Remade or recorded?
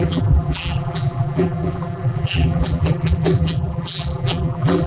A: remade